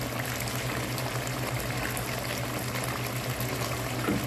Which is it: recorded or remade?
recorded